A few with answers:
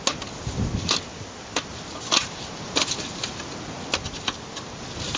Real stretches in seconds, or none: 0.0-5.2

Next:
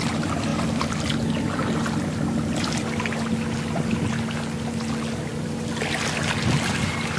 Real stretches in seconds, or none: 0.0-7.2

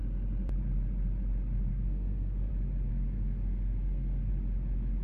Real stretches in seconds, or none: 0.0-1.7; 2.5-2.9; 4.3-5.0

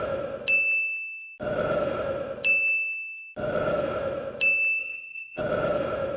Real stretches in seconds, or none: 0.0-4.8; 5.4-6.2

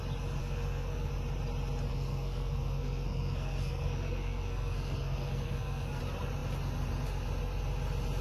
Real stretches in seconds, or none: 0.0-0.4; 1.1-1.9; 6.0-8.2

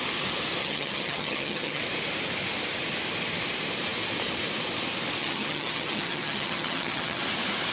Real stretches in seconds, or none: 0.0-0.6; 1.8-5.2; 7.2-7.7

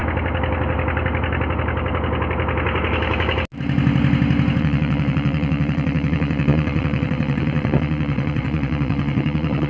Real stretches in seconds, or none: 0.0-4.6